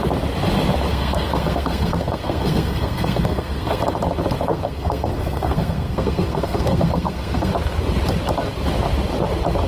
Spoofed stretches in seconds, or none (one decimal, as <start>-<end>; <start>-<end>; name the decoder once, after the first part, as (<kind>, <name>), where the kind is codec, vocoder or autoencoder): 0.9-3.8 (codec, SNAC); 4.5-7.5